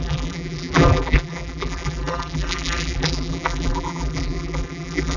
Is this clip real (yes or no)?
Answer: no